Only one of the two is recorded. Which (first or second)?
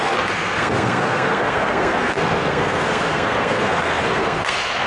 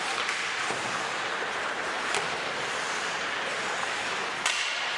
second